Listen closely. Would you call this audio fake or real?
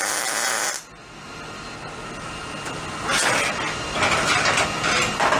real